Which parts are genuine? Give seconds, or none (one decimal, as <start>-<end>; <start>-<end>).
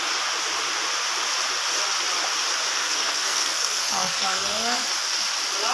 0.0-2.7; 4.9-5.7